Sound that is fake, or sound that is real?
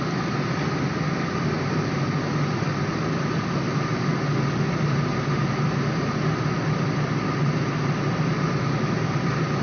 real